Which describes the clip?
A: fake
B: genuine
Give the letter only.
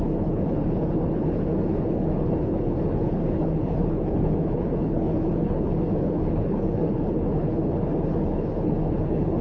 A